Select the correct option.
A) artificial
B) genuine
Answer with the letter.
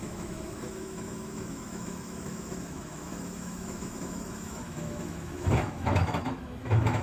A